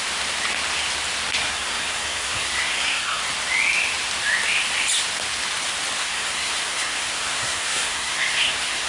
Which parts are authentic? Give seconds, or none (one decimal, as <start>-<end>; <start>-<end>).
0.0-1.4; 3.2-6.0